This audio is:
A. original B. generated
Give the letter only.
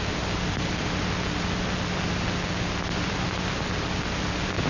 A